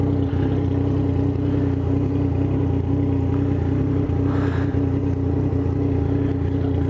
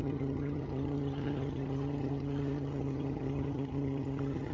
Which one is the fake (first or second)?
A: second